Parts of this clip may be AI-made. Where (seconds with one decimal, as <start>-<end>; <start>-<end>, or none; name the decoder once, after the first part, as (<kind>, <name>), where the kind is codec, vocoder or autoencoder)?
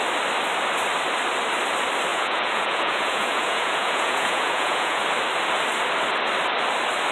2.1-5.0 (vocoder, Vocos)